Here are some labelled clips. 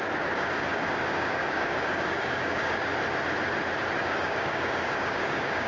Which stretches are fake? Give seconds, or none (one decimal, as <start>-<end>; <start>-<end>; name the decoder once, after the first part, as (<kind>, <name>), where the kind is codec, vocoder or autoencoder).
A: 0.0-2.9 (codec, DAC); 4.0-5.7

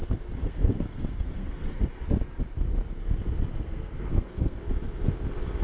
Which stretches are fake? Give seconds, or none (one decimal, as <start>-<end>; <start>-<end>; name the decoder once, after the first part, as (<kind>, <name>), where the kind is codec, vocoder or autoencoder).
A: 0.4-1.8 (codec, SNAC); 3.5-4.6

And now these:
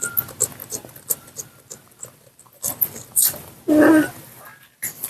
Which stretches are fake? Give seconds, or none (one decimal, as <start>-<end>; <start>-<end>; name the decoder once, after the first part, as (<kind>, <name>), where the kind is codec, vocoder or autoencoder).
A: 0.6-3.6 (vocoder, BigVGAN v2); 4.5-5.1

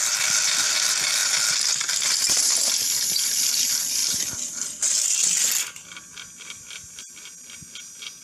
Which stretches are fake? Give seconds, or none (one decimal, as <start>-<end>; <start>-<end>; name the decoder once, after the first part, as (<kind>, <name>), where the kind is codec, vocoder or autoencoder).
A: none

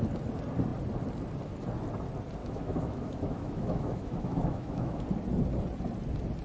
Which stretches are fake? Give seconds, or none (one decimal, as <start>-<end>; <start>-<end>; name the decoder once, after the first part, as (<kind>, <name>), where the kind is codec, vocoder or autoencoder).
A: 2.4-5.0 (autoencoder, DAC-VAE)